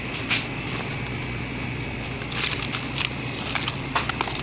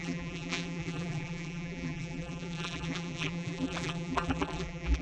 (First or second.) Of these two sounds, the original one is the first